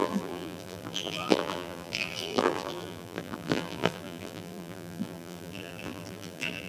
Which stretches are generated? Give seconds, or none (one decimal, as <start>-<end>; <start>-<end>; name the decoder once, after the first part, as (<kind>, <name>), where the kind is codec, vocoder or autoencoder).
0.0-6.7 (vocoder, BigVGAN v2)

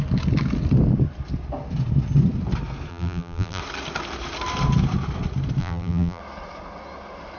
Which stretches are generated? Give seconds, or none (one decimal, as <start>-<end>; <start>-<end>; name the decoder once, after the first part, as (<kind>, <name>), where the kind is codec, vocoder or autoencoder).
2.9-3.6 (vocoder, BigVGAN v2); 5.6-6.2

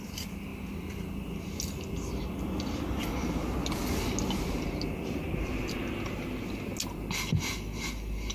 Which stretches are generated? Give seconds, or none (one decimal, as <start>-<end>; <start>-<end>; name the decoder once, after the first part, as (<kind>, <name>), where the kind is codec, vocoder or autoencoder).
none